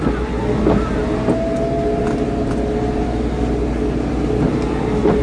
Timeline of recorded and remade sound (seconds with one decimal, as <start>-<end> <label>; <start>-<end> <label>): 0.0-5.2 recorded